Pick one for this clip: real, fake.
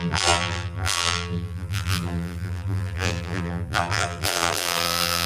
fake